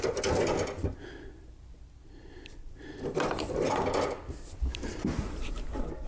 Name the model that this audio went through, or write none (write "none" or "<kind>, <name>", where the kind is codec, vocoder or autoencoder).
none